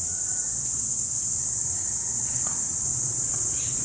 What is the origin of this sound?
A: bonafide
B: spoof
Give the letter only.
B